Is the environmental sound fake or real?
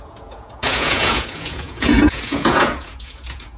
fake